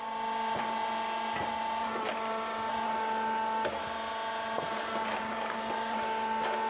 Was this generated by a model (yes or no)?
no